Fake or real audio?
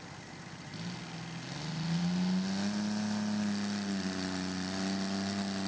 real